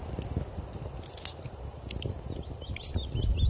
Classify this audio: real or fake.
real